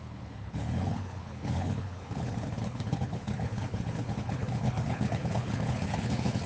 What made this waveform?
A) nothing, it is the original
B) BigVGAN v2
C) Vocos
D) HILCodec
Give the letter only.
D